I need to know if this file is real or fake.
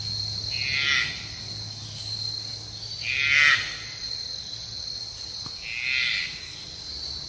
real